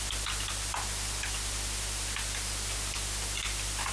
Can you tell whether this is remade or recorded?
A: recorded